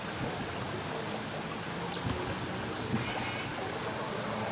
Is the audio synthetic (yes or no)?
no